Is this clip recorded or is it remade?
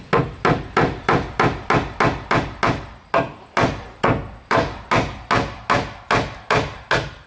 recorded